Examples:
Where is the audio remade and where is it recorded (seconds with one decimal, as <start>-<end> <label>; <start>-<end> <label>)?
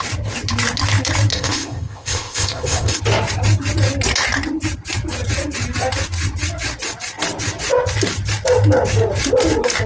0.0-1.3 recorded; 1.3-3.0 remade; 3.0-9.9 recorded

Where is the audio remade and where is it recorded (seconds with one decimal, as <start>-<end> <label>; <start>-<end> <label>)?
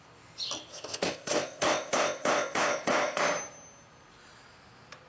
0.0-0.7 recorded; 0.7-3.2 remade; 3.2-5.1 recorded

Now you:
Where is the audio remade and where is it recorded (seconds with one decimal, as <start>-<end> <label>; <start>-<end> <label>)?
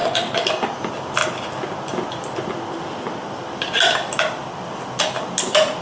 0.0-5.8 recorded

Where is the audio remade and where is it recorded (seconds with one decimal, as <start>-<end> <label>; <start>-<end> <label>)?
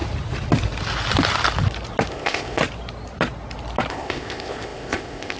0.0-2.1 recorded; 2.1-2.6 remade; 2.6-3.9 recorded; 3.9-5.4 remade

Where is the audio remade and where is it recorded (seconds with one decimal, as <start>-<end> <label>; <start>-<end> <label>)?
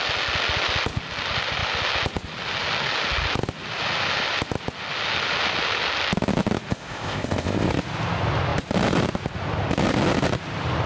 0.0-6.7 recorded; 6.7-7.7 remade; 7.7-10.9 recorded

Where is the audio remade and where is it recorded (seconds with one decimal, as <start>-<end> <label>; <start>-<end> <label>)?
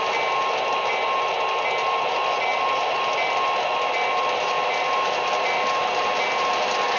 0.0-7.0 recorded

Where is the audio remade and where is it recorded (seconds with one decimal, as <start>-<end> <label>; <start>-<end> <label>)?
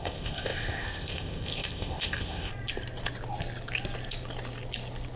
0.0-2.5 remade; 2.5-5.2 recorded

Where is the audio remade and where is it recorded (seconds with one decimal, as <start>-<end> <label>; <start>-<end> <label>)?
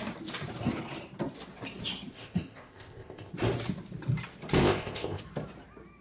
0.0-2.1 recorded; 2.1-3.3 remade; 3.3-4.6 recorded; 4.6-5.2 remade; 5.2-6.0 recorded